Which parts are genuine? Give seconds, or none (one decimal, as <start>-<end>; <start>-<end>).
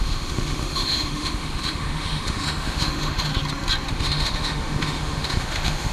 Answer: 3.3-3.9